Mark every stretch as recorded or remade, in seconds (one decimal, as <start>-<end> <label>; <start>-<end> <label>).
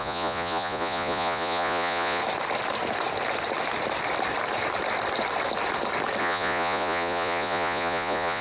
0.0-2.2 remade; 2.2-6.2 recorded; 6.2-8.4 remade